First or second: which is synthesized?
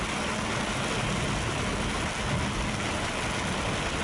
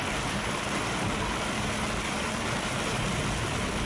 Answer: second